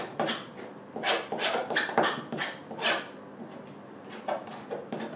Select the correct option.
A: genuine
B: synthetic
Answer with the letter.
A